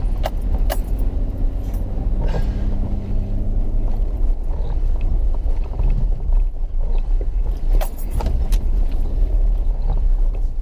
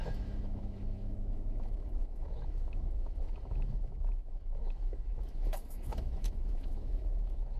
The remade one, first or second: second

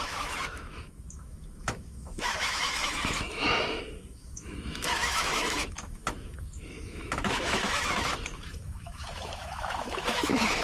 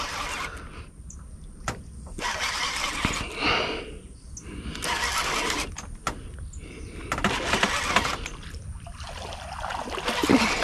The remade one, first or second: first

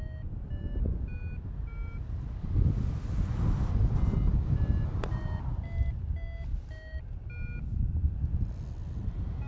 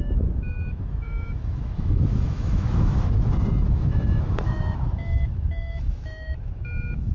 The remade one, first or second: second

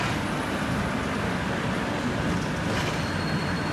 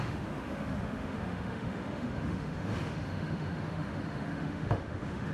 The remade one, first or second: second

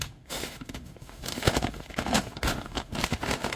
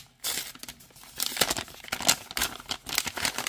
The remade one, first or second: first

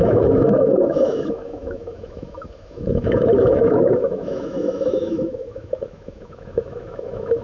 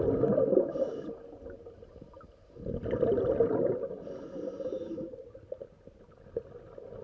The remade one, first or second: first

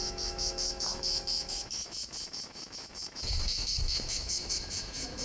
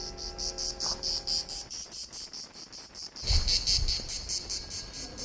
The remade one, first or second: first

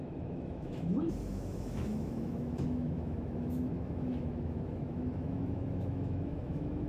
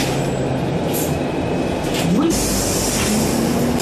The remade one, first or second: first